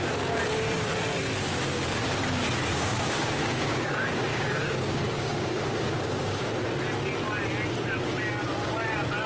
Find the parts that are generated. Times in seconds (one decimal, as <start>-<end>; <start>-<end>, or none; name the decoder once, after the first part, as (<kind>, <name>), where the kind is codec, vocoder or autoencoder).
2.7-6.5 (codec, DAC)